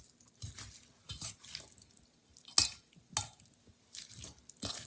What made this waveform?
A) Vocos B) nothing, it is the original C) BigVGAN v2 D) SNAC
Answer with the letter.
B